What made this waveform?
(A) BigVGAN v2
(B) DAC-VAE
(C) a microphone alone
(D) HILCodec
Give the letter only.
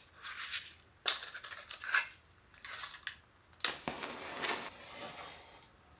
C